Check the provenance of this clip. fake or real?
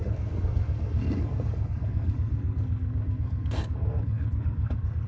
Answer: fake